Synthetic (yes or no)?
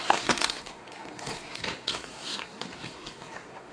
yes